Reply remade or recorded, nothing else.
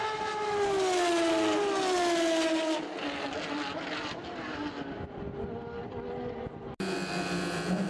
recorded